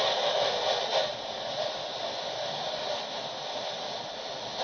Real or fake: real